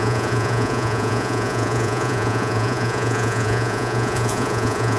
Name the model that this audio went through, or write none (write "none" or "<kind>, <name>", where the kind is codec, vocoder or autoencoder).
vocoder, Vocos